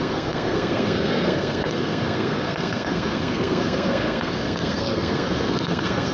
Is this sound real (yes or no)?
no